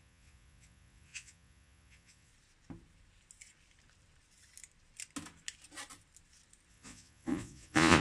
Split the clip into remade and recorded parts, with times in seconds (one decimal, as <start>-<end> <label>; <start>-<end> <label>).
0.0-2.3 remade; 2.3-6.7 recorded; 6.7-8.0 remade